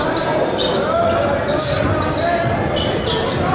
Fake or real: real